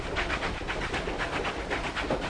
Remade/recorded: recorded